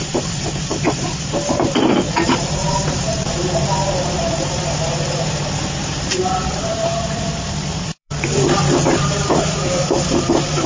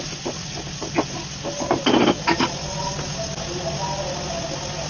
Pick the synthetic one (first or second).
first